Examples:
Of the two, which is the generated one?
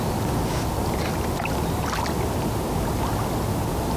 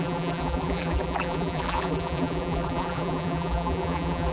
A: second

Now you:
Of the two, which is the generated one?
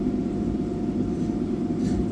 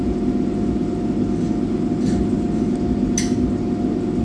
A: first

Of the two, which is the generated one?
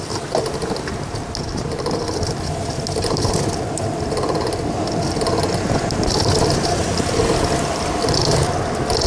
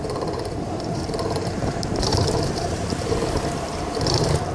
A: second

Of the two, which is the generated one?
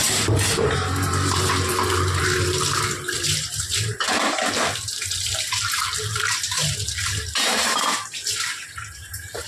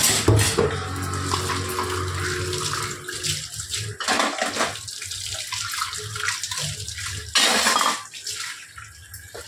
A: first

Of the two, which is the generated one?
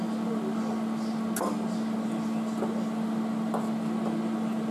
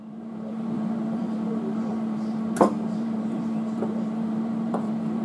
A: second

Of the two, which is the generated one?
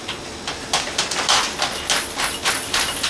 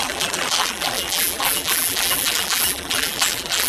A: second